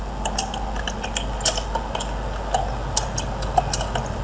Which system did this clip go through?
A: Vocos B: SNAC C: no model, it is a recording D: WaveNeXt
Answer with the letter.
C